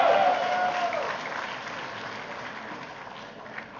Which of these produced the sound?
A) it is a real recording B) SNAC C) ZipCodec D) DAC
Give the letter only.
A